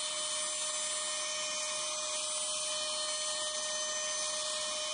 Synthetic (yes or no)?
no